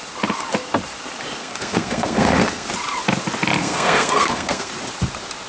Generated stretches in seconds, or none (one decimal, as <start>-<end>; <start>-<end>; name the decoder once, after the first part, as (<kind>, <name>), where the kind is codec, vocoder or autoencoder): 1.4-2.7 (codec, SNAC); 3.6-4.7